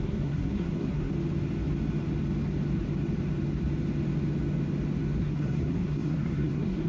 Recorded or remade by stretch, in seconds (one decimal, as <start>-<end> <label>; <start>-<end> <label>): 0.0-1.1 remade; 1.1-5.2 recorded; 5.2-6.9 remade